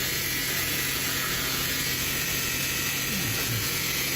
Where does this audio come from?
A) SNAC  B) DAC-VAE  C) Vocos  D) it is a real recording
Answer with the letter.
C